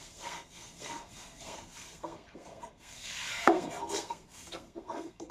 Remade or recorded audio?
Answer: remade